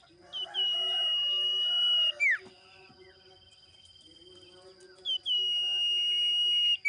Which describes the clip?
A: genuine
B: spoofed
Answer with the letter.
A